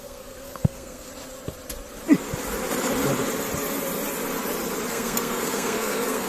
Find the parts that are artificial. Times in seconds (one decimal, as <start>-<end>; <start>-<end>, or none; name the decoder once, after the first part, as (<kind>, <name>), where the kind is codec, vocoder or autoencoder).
0.0-1.1 (codec, SNAC); 4.9-6.3